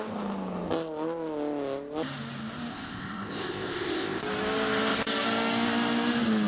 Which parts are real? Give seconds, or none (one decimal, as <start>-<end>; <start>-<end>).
0.0-2.7; 4.2-6.5

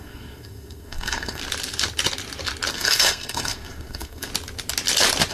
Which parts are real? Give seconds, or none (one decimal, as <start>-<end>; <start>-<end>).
1.4-2.7; 4.3-5.3

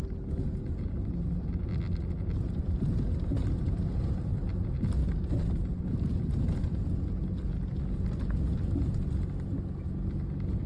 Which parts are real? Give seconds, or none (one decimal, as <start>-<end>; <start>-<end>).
0.0-10.7

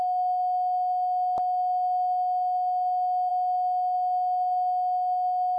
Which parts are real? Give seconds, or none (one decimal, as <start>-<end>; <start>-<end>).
0.0-5.6

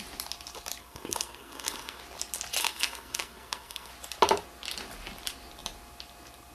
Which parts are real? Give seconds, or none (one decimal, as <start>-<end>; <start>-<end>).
0.0-0.8; 2.0-2.6; 3.9-6.5

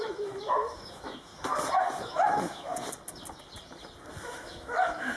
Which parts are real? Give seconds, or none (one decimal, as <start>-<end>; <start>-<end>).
1.3-2.0; 2.7-4.2

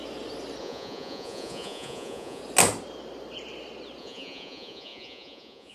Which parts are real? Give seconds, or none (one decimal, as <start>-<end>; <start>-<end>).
0.0-0.6; 2.4-4.0

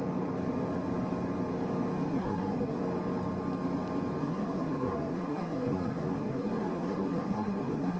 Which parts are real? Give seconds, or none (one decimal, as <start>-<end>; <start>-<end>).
0.0-2.1; 2.8-4.2